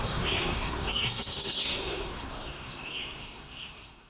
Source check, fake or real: fake